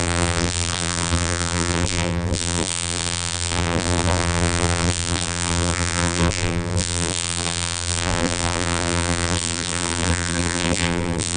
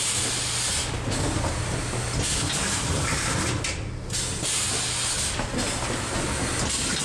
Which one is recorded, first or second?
second